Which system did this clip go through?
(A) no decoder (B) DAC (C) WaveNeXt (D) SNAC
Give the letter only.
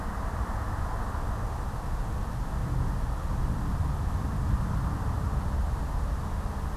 A